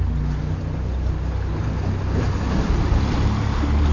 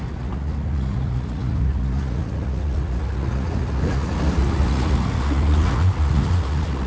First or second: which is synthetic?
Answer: second